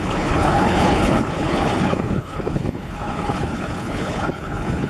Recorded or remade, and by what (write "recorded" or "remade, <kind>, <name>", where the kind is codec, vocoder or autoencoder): remade, codec, HILCodec